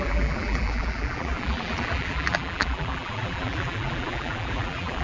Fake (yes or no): yes